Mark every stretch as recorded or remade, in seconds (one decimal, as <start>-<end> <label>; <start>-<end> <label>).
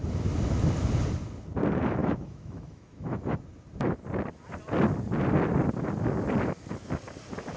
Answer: 0.0-2.0 recorded; 2.0-3.4 remade; 3.4-7.6 recorded